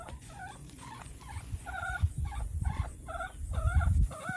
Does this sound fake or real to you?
fake